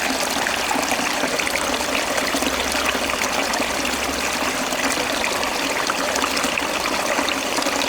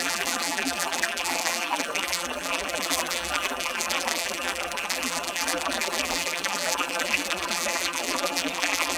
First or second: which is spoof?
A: second